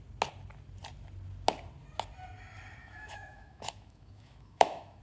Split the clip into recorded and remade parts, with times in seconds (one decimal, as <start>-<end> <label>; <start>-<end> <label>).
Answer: 0.0-2.8 recorded; 2.8-5.0 remade

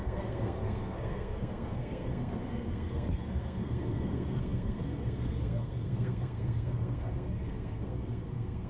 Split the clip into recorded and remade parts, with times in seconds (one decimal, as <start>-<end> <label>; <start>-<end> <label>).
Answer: 0.0-8.7 remade

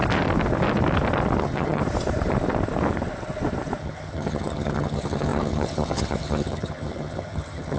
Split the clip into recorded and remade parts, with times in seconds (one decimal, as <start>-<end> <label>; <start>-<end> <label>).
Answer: 0.0-1.4 recorded; 1.4-1.8 remade; 1.8-3.8 recorded; 3.8-7.8 remade

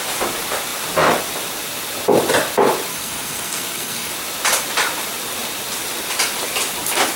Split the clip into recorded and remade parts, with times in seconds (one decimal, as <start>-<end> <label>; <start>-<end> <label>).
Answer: 0.0-2.9 recorded; 2.9-4.1 remade; 4.1-7.2 recorded

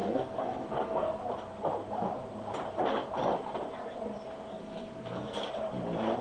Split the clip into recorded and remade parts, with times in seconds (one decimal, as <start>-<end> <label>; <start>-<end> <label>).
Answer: 0.0-1.2 remade; 1.2-4.5 recorded; 4.5-5.5 remade; 5.5-6.2 recorded